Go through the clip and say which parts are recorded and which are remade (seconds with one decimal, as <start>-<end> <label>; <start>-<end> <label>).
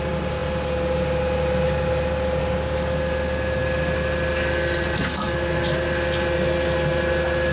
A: 0.0-7.5 recorded